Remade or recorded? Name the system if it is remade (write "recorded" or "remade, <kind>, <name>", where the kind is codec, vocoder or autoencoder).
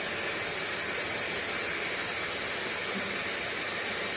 recorded